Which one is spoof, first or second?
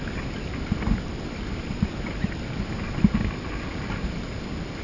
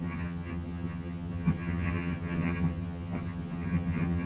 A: second